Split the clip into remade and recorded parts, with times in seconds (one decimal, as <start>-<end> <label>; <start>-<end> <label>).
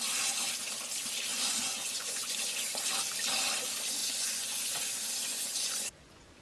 0.0-1.3 recorded; 1.3-2.8 remade; 2.8-4.0 recorded; 4.0-6.4 remade